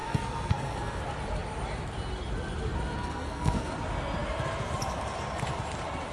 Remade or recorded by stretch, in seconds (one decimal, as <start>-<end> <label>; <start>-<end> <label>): 0.0-1.0 remade; 1.0-3.0 recorded; 3.0-3.7 remade; 3.7-6.1 recorded